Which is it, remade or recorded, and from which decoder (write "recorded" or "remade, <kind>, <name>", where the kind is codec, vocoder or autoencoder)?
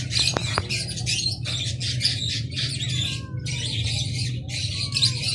recorded